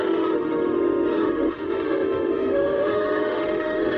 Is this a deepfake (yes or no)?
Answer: yes